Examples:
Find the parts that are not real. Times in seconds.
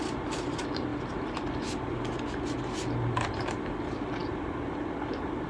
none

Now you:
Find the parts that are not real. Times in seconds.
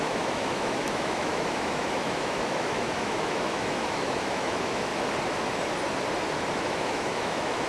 0.0-4.9 (autoencoder, DAC-VAE); 6.5-7.7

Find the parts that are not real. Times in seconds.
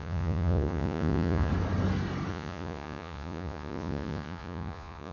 0.0-1.5 (vocoder, Vocos); 2.3-5.1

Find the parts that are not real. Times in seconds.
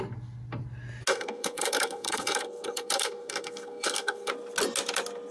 1.1-4.3 (codec, SNAC)